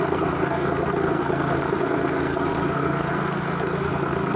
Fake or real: fake